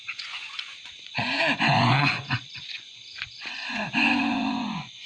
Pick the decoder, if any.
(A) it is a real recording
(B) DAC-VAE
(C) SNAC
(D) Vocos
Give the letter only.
D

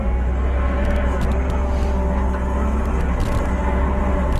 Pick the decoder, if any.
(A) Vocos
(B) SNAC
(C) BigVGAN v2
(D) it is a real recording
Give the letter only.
D